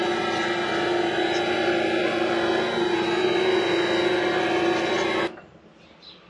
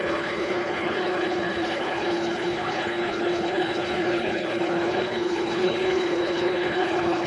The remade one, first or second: second